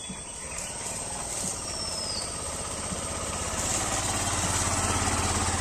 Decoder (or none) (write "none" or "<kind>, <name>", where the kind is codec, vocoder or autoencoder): none